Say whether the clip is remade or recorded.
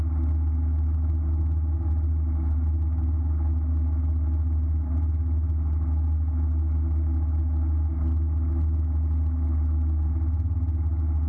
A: recorded